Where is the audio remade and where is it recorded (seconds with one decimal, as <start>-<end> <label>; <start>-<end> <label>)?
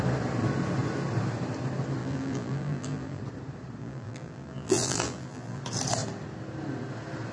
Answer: 0.0-2.0 recorded; 2.0-3.2 remade; 3.2-3.8 recorded; 3.8-5.6 remade; 5.6-7.3 recorded